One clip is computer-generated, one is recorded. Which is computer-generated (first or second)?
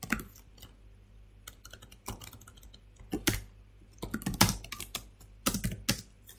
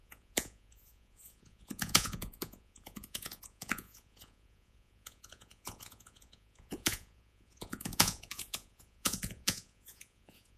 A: second